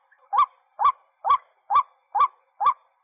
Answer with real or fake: real